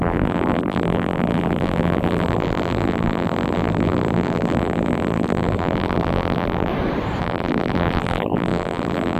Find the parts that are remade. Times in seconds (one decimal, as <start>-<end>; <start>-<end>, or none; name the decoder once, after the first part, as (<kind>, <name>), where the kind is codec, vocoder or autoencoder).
0.0-6.7 (vocoder, BigVGAN v2); 7.2-9.2